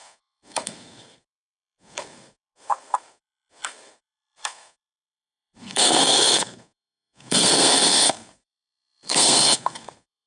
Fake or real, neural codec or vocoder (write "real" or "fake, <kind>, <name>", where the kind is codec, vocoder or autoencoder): fake, codec, SNAC